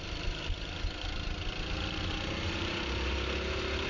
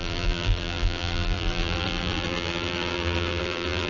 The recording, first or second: first